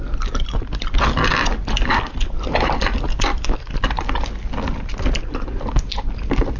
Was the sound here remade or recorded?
recorded